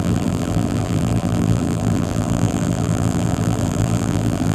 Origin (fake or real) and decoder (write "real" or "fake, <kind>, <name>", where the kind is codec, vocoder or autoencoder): fake, vocoder, BigVGAN v2